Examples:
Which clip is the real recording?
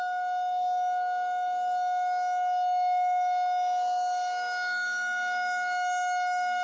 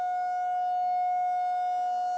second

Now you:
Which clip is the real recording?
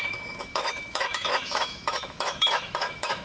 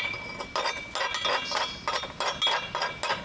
second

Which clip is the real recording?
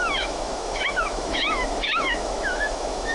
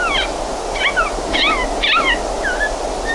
second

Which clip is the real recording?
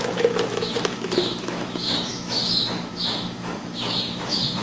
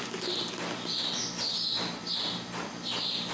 second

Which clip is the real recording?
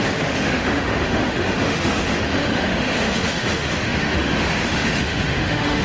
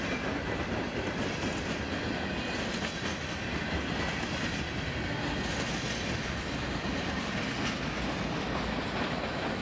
second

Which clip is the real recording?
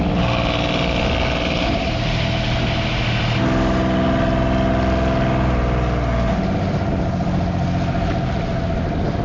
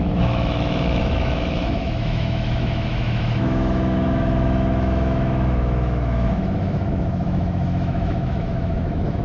first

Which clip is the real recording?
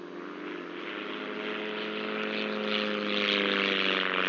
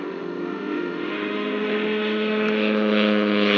first